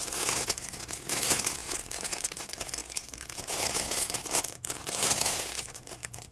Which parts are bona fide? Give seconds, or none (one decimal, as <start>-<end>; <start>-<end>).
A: none